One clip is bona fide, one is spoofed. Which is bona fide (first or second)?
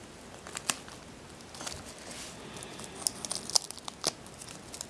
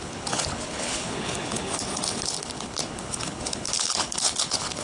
first